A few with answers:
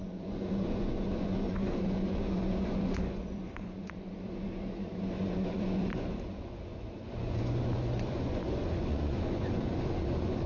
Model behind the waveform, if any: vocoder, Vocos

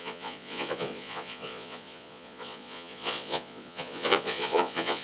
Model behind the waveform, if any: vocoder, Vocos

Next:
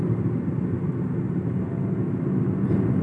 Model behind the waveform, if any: none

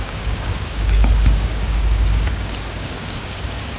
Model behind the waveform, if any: codec, DAC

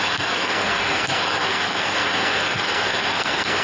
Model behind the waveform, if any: codec, SNAC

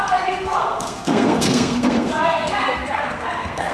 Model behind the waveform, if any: codec, SNAC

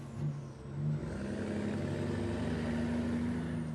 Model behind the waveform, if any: none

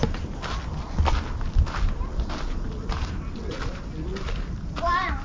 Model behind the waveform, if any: none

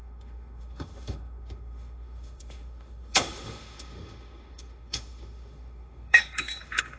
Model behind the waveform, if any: autoencoder, DAC-VAE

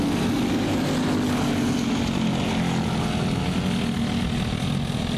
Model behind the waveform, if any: none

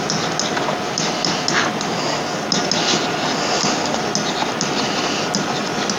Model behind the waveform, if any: none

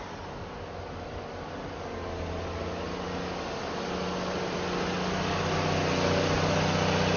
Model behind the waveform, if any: none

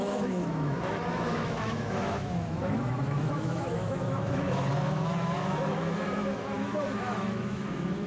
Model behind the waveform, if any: autoencoder, DAC-VAE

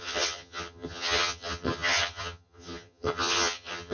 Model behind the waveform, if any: vocoder, HiFi-GAN